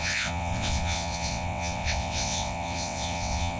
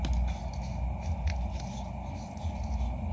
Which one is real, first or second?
second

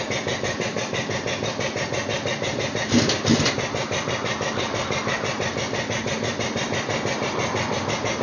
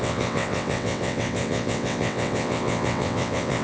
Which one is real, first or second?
first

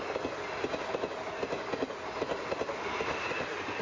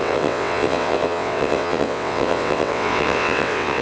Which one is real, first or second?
first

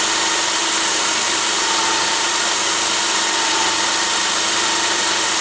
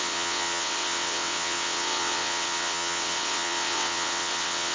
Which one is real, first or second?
first